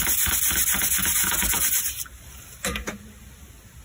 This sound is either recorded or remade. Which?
recorded